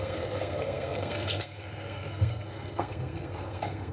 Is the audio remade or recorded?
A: remade